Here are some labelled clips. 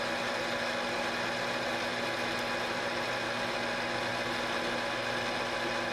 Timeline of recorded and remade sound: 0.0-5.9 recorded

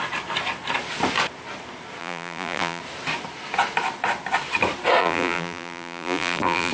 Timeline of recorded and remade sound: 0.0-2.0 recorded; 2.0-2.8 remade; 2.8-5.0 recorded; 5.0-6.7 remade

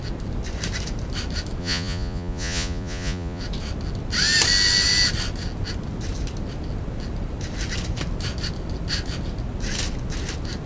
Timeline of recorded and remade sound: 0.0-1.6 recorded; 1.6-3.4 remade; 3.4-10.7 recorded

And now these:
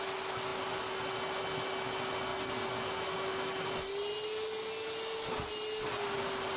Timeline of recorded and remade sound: 0.0-6.6 recorded